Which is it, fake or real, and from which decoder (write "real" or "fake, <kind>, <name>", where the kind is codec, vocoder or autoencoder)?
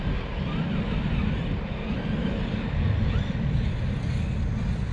real